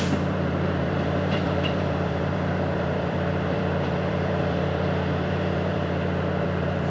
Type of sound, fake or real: fake